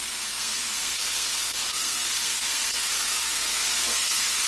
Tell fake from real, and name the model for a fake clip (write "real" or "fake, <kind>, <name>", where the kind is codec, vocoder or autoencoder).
fake, codec, SNAC